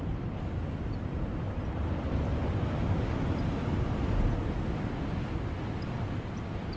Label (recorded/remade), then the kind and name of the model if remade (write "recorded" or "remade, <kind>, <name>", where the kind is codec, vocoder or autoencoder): recorded